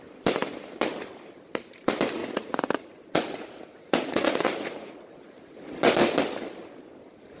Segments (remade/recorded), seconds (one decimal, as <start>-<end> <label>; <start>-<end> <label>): 0.0-2.2 recorded; 2.2-4.9 remade; 4.9-7.4 recorded

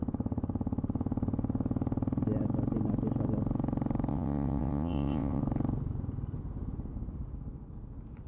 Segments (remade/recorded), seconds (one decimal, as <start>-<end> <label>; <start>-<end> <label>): 0.0-4.1 recorded; 4.1-5.4 remade; 5.4-8.3 recorded